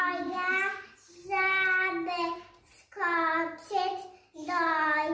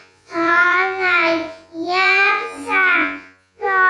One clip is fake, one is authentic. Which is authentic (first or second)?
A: first